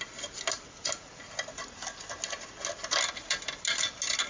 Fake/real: real